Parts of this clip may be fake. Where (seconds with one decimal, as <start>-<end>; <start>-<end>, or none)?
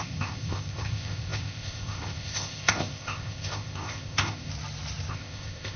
0.0-4.5; 5.1-5.8